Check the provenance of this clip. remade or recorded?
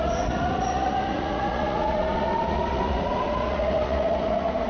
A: remade